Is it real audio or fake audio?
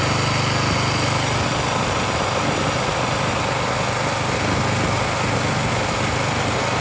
real